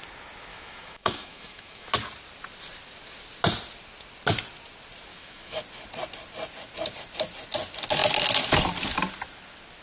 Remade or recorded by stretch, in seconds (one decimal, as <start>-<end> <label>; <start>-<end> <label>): 0.0-0.5 recorded; 0.5-1.9 remade; 1.9-5.1 recorded; 5.1-5.6 remade; 5.6-9.8 recorded